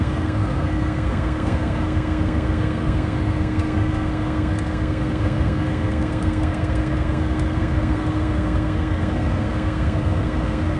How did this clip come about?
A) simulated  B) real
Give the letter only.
A